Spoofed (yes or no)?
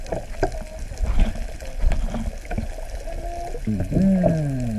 no